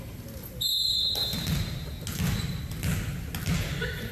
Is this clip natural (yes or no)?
yes